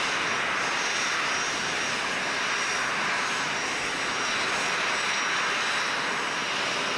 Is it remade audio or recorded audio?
recorded